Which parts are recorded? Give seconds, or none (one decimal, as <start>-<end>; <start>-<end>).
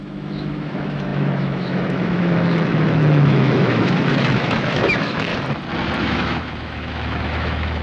5.3-6.0